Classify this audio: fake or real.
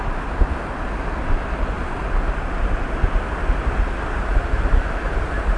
real